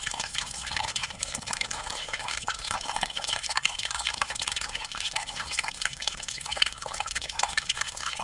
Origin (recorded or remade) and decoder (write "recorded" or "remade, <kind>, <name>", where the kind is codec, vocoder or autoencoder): remade, codec, SNAC